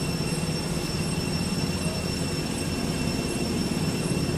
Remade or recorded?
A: recorded